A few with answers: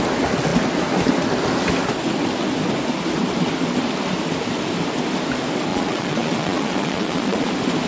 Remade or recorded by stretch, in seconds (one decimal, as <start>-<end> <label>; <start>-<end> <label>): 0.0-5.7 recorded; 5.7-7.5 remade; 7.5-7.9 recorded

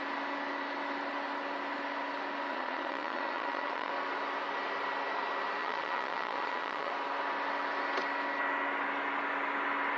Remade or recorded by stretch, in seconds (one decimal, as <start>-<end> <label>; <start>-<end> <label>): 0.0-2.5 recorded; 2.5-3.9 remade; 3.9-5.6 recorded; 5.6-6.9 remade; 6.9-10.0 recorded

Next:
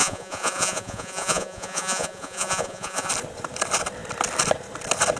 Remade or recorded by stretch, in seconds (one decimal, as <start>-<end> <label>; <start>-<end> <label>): 0.0-3.1 remade; 3.1-5.2 recorded